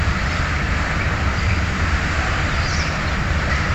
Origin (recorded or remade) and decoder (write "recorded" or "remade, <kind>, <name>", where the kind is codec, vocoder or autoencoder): remade, vocoder, BigVGAN v2